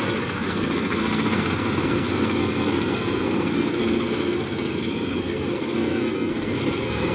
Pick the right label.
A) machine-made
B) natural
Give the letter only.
A